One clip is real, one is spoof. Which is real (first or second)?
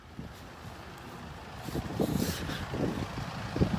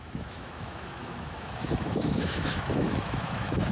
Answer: first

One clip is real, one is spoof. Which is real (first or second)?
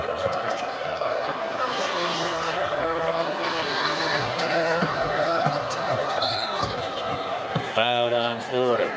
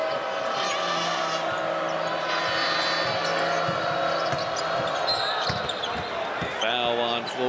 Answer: second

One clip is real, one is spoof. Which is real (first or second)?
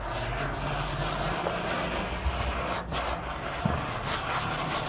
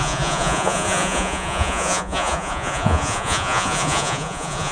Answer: first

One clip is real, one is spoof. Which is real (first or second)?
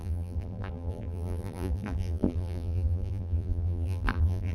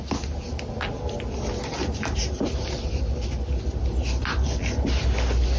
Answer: second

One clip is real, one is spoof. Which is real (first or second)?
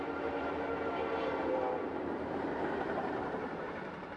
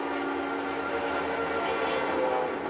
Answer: second